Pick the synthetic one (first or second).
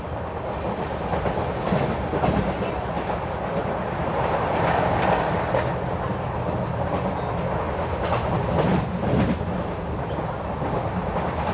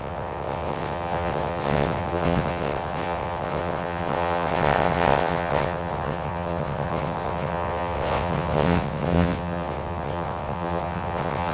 second